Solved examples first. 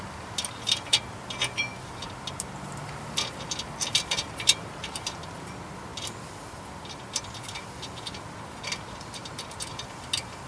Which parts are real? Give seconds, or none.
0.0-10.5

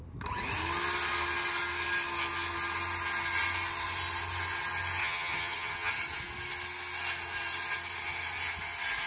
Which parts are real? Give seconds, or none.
0.0-5.0; 5.9-9.1